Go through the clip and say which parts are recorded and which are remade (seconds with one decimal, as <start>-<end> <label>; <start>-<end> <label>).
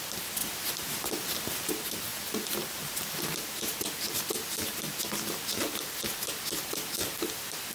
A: 0.0-7.7 recorded